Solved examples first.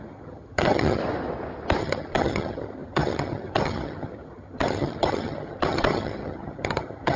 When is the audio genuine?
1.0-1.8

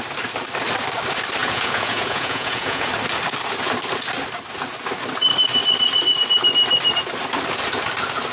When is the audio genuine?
0.0-1.4; 2.9-8.3

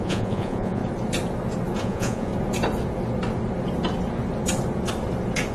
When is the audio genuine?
0.8-1.8; 2.3-5.5

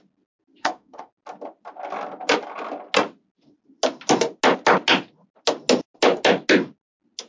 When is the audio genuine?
0.0-0.6; 1.1-7.3

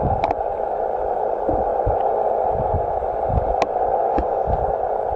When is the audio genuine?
0.0-4.1; 4.6-5.2

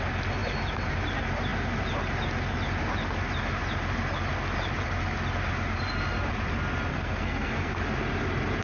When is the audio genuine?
0.0-6.9; 7.8-8.6